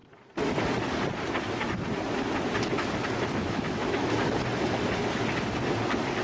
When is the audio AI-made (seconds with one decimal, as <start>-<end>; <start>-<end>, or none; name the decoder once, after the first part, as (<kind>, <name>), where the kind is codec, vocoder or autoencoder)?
3.4-4.1 (autoencoder, DAC-VAE)